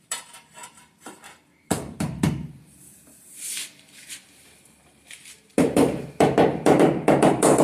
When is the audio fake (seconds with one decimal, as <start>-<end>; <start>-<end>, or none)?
0.0-7.6